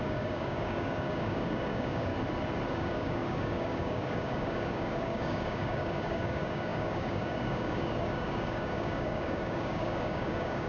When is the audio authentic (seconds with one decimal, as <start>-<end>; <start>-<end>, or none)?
2.1-2.7